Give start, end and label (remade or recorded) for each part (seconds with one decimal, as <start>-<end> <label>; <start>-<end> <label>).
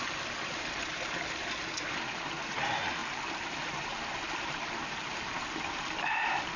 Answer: 0.0-3.0 recorded; 3.0-6.6 remade